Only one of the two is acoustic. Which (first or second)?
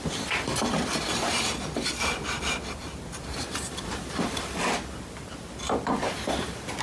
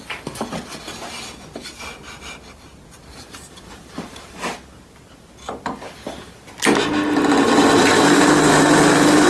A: second